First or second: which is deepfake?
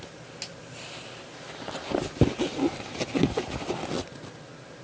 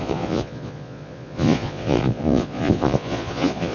second